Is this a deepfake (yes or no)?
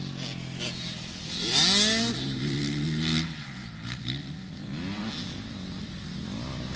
no